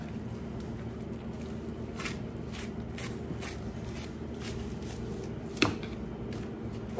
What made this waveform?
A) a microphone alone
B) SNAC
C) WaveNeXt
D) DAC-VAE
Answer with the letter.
A